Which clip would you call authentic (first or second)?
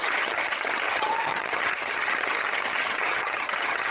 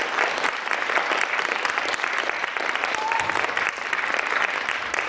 second